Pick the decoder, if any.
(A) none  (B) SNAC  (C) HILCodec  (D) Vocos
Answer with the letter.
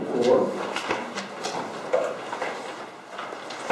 A